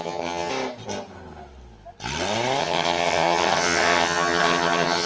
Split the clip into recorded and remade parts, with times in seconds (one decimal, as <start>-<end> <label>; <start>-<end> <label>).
0.0-0.5 remade; 0.5-2.6 recorded; 2.6-5.1 remade